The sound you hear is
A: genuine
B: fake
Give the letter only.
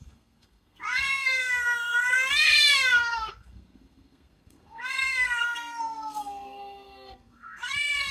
B